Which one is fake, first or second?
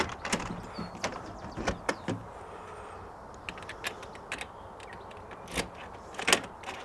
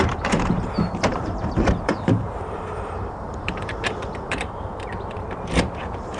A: second